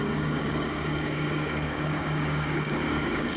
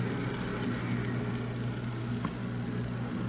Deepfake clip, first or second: first